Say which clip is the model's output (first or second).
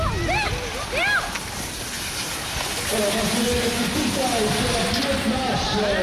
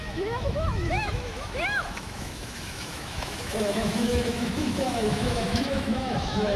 second